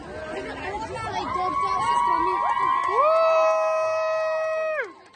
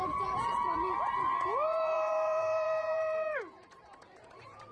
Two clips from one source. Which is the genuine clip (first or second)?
first